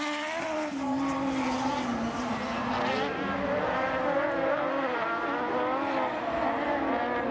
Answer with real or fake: real